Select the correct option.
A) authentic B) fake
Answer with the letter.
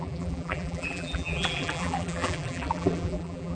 B